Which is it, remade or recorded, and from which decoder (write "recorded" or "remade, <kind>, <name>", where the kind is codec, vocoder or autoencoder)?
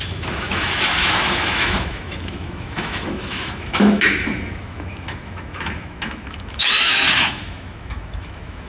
remade, autoencoder, DAC-VAE